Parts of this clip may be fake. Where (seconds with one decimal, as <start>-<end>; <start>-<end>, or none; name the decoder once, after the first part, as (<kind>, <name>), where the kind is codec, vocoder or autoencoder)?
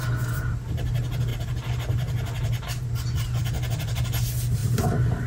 1.3-2.9 (vocoder, BigVGAN v2); 4.6-5.3